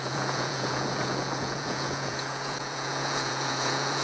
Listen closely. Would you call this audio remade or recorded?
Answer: remade